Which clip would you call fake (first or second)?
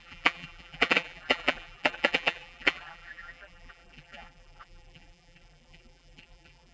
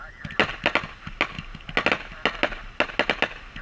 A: first